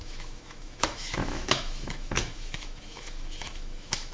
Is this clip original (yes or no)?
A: no